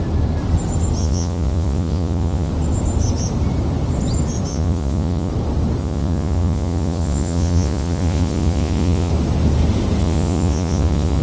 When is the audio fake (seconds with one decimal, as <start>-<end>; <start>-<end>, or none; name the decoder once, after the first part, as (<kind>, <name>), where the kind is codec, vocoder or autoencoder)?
1.0-2.5 (vocoder, Vocos); 4.5-5.3; 5.8-9.1; 10.0-11.2